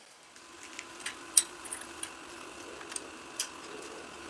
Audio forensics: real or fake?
fake